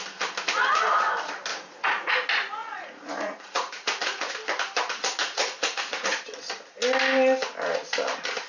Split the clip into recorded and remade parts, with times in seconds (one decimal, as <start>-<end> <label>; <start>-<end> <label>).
0.0-1.5 recorded; 1.5-2.1 remade; 2.1-2.6 recorded; 2.6-4.3 remade; 4.3-5.2 recorded; 5.2-6.2 remade; 6.2-8.5 recorded